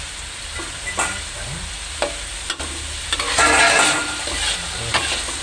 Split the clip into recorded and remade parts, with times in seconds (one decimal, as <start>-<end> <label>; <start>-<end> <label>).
0.0-5.4 recorded